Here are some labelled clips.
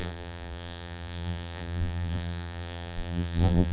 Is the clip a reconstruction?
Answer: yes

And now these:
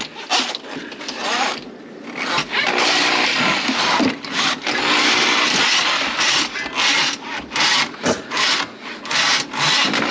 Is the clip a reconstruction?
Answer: no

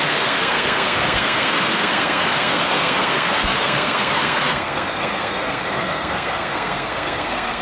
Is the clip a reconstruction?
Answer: yes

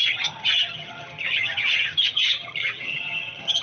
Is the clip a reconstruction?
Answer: yes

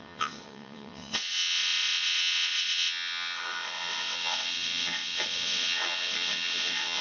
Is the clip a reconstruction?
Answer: yes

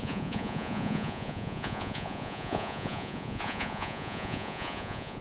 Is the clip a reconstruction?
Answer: yes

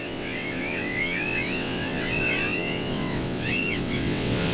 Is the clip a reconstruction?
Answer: yes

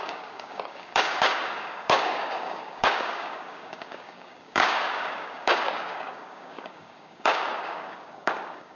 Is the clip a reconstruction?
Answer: yes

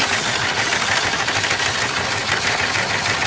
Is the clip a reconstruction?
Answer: no